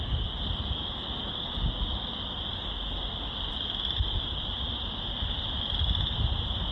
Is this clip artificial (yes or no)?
no